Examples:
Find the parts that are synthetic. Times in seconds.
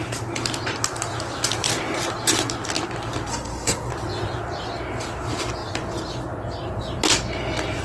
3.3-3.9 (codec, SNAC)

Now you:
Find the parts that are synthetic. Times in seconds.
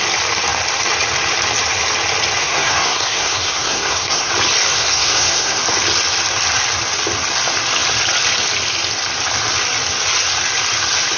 2.4-4.3 (codec, SNAC); 4.7-5.6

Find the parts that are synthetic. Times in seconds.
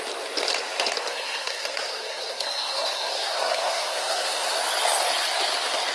1.1-4.6 (codec, SNAC)